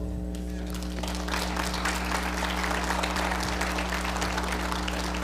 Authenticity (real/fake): real